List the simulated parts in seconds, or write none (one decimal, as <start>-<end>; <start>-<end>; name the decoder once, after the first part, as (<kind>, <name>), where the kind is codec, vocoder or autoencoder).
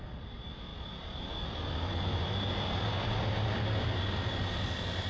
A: 0.0-0.7 (vocoder, BigVGAN v2); 3.8-5.1